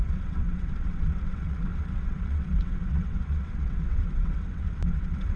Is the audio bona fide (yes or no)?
no